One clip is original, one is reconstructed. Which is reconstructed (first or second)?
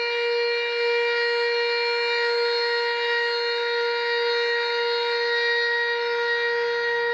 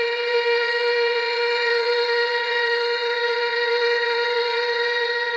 second